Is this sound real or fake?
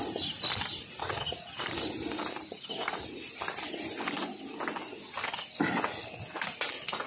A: real